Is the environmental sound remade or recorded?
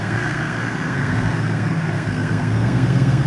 remade